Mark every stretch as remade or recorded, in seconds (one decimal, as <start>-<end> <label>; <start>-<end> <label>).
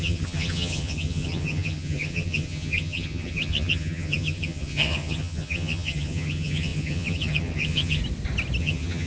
0.0-8.0 remade; 8.0-8.6 recorded; 8.6-9.1 remade